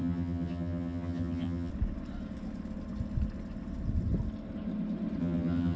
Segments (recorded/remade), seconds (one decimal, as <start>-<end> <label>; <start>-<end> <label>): 0.0-1.7 remade; 1.7-5.2 recorded; 5.2-5.8 remade